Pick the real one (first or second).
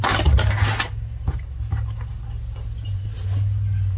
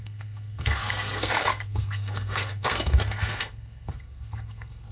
first